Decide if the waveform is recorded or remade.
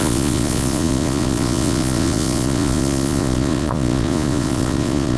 remade